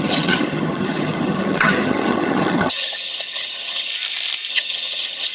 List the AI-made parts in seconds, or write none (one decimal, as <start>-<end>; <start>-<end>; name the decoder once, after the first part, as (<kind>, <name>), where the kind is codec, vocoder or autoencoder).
0.0-3.9 (vocoder, HiFi-GAN); 4.5-5.3

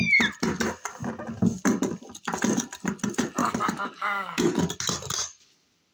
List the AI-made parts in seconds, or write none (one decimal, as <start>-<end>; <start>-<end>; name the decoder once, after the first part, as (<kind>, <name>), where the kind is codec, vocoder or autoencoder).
3.4-4.6 (codec, DAC)

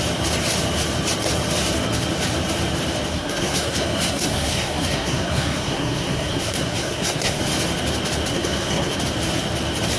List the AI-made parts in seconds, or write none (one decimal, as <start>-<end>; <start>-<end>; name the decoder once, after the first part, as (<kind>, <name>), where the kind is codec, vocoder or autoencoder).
3.1-7.4 (codec, SNAC); 8.3-9.0

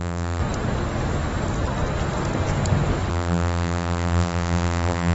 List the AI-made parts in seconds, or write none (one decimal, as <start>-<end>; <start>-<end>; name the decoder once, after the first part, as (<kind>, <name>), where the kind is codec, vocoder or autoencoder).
0.0-0.4 (vocoder, BigVGAN v2); 3.1-5.1

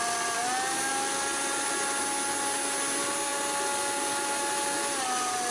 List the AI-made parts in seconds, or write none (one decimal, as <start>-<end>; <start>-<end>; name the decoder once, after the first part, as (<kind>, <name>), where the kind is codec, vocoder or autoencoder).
none

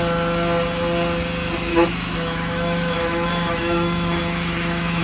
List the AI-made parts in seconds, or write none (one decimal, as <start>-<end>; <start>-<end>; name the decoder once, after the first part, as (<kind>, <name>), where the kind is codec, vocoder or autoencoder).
1.7-5.0 (autoencoder, DAC-VAE)

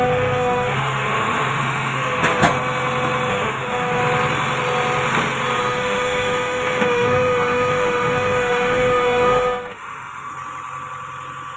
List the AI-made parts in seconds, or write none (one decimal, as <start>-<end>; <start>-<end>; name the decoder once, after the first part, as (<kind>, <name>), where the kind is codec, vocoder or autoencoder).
0.0-2.4 (autoencoder, DAC-VAE); 3.3-4.0; 5.6-10.3

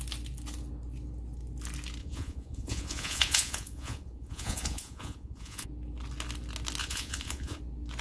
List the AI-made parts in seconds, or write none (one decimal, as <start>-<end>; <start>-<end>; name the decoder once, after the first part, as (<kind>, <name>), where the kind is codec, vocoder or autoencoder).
2.0-5.7 (vocoder, Vocos); 6.8-7.6